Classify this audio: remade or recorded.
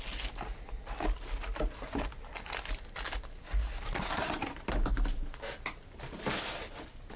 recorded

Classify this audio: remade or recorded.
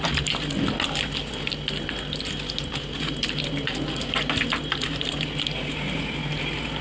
recorded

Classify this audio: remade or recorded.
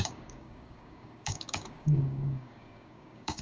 remade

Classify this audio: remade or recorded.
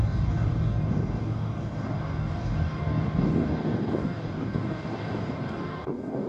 remade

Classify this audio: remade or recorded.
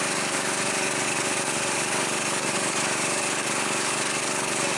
remade